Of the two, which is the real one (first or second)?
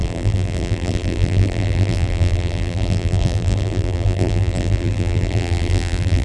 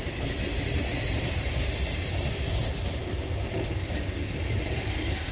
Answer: second